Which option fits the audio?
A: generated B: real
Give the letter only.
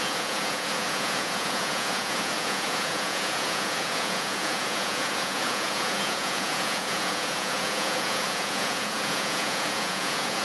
A